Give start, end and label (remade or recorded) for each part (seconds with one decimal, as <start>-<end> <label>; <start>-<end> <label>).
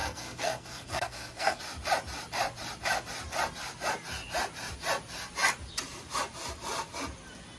0.0-1.6 remade; 1.6-7.6 recorded